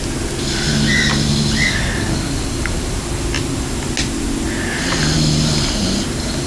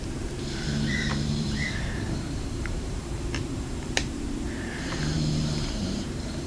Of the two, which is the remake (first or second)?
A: second